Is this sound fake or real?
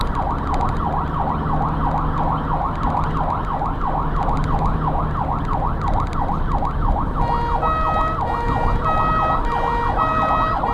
real